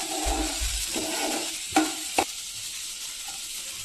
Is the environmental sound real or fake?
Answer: real